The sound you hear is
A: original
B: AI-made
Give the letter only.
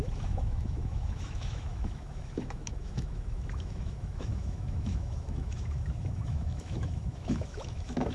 B